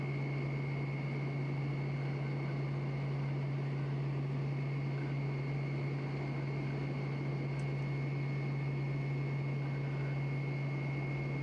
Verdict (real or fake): real